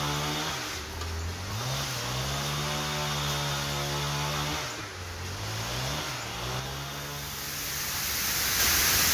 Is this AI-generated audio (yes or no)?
no